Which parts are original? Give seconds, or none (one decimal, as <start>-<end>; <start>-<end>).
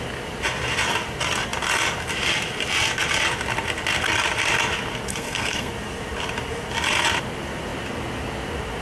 0.0-5.1; 5.7-8.8